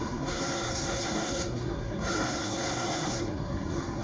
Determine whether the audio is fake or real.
fake